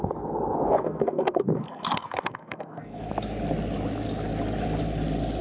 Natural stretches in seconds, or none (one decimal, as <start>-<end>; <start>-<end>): 0.0-0.7; 3.0-5.4